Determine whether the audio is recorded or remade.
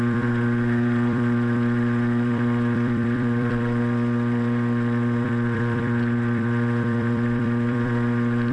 remade